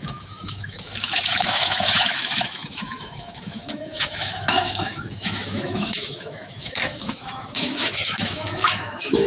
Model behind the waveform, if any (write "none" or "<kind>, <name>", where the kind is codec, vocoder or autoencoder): autoencoder, DAC-VAE